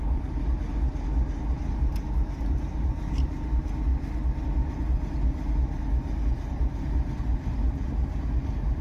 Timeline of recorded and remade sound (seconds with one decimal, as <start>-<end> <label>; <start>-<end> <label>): 0.0-0.4 remade; 0.4-1.5 recorded; 1.5-3.9 remade; 3.9-4.4 recorded; 4.4-8.8 remade

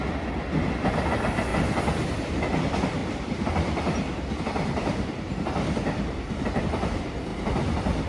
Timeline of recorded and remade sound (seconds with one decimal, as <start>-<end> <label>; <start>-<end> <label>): 0.0-1.5 recorded; 1.5-2.3 remade; 2.3-3.0 recorded; 3.0-6.6 remade; 6.6-7.3 recorded; 7.3-8.1 remade

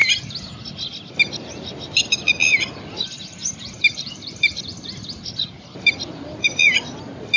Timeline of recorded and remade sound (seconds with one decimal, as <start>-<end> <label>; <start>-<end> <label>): 0.0-2.4 recorded; 2.4-6.8 remade; 6.8-7.4 recorded

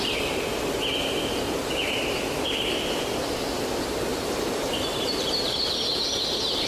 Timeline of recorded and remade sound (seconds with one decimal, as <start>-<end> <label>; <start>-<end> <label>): 0.0-4.1 recorded; 4.1-5.7 remade; 5.7-6.7 recorded

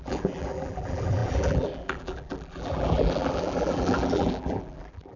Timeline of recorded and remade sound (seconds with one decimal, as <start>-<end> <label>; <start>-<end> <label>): 0.0-5.2 remade

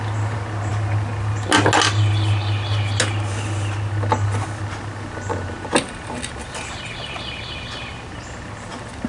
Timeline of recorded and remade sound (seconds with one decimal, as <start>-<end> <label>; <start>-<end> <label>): 0.0-9.1 recorded